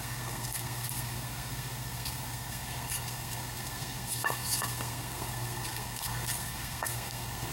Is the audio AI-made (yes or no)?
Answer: yes